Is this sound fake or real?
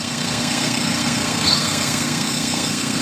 fake